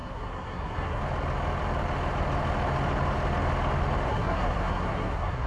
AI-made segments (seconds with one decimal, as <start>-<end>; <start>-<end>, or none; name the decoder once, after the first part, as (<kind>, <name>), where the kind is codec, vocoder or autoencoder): 0.0-1.0 (codec, SNAC); 4.1-5.5

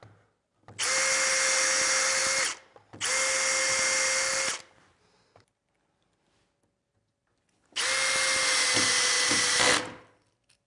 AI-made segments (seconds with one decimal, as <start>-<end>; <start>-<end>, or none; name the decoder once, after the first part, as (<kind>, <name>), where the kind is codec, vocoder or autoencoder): none

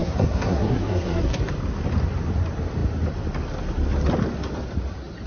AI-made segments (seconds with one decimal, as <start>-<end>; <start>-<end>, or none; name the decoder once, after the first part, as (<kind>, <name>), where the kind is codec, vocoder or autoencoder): 0.0-1.4 (codec, SNAC)

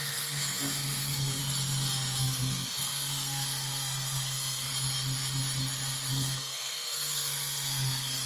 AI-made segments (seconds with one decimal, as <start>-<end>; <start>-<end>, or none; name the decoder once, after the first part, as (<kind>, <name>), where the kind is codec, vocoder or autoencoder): 0.0-1.4 (codec, SNAC); 2.2-4.7; 6.1-8.3

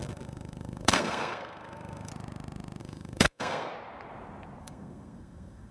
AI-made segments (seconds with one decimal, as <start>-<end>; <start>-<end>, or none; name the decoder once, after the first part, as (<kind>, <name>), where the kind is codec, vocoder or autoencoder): 0.0-2.1 (codec, SNAC); 2.8-3.7; 4.6-5.7